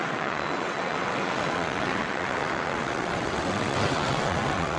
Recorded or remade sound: remade